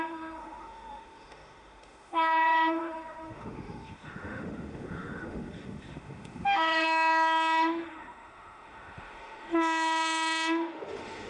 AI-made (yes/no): yes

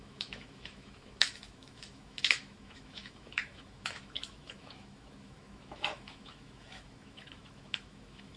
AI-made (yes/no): yes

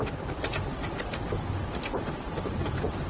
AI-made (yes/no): no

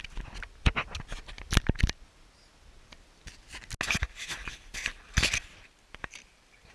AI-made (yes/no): no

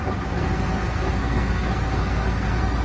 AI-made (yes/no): yes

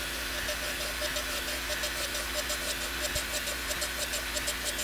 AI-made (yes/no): no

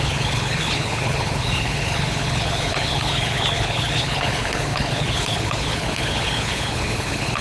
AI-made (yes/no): yes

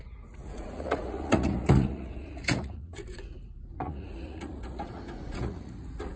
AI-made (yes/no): yes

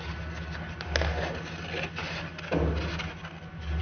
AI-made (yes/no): no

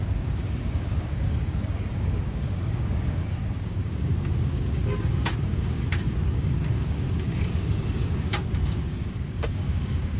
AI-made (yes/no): yes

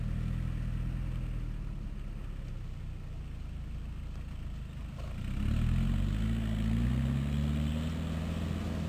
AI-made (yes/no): no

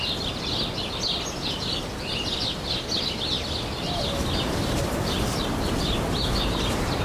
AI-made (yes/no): no